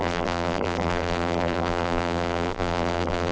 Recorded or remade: remade